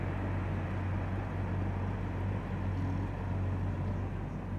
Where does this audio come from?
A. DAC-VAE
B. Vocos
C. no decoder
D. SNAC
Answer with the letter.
C